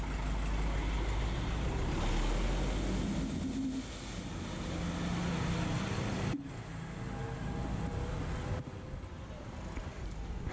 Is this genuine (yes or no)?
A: yes